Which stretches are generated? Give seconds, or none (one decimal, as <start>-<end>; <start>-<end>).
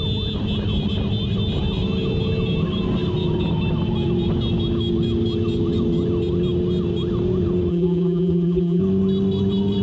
7.7-8.8